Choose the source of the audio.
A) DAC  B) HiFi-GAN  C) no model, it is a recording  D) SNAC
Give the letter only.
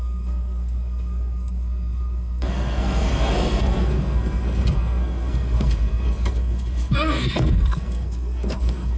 D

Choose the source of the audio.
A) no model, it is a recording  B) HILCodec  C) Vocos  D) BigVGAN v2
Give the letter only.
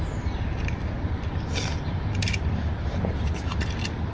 A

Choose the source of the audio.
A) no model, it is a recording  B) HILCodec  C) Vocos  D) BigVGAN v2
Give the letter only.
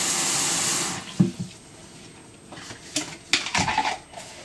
A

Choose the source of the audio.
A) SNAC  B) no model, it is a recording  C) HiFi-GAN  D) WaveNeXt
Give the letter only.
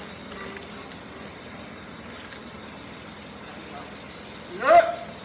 B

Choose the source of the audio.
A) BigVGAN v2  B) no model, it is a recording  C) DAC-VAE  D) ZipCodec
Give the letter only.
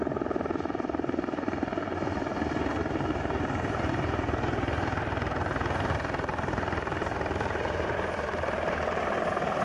A